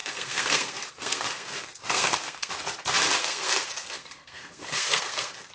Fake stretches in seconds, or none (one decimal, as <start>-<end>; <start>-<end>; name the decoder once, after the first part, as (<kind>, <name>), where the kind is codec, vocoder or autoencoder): 0.0-2.5 (codec, SNAC); 3.2-5.5